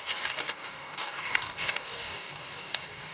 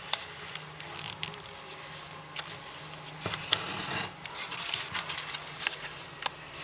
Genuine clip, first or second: second